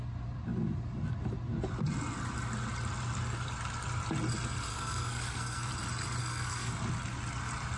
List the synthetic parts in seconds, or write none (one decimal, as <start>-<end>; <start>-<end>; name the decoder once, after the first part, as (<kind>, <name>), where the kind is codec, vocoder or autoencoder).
4.7-5.7 (codec, SNAC); 6.2-6.7